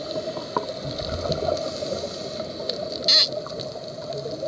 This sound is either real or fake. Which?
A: real